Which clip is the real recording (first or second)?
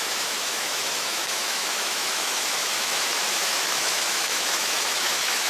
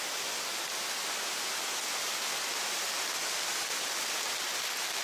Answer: second